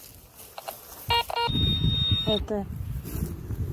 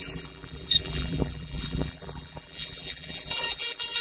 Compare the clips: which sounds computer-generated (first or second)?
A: second